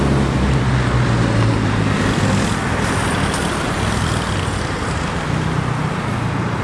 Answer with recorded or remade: recorded